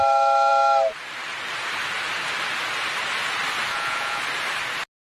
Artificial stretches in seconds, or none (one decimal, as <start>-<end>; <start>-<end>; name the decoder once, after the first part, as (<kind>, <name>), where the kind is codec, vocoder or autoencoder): 3.7-4.2 (vocoder, Vocos)